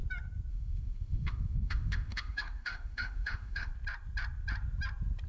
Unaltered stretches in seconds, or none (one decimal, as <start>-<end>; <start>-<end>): 0.0-0.5; 3.7-5.3